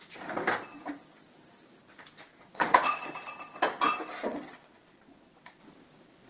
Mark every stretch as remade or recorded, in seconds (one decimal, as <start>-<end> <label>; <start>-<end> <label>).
0.0-2.5 recorded; 2.5-3.1 remade; 3.1-4.3 recorded; 4.3-5.6 remade; 5.6-6.3 recorded